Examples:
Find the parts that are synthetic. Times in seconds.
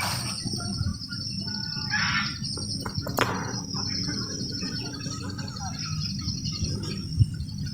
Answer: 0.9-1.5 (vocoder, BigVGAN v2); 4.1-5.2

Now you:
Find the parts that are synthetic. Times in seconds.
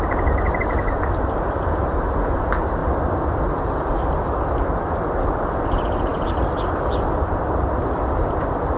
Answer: 2.8-5.6 (vocoder, BigVGAN v2)